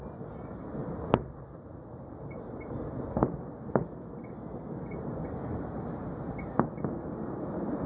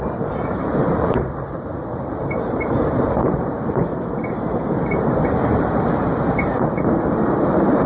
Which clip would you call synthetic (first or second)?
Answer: second